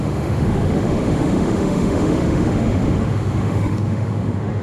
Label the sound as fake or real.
fake